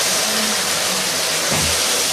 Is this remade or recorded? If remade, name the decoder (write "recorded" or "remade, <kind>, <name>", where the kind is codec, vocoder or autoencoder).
recorded